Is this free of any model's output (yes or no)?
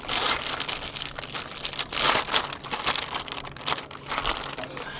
yes